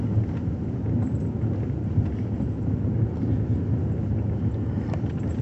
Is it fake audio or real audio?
real